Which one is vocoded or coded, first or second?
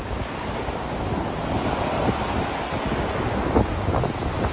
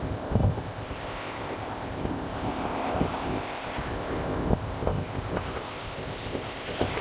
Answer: second